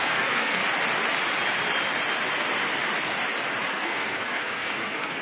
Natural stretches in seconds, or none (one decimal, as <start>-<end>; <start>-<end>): 0.6-3.7